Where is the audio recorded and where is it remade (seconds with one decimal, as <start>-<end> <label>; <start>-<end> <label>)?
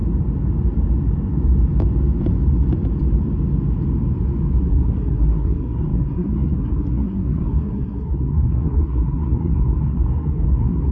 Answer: 0.0-4.7 recorded; 4.7-10.9 remade